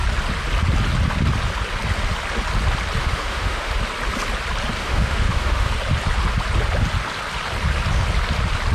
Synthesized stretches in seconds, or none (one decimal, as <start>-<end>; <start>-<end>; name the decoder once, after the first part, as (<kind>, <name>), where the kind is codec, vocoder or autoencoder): 3.0-3.7 (autoencoder, DAC-VAE); 4.8-5.7